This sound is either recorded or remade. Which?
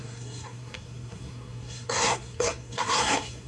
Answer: remade